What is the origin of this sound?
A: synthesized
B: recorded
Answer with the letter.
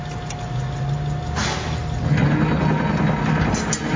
B